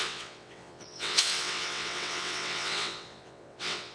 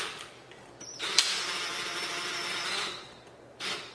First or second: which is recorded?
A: second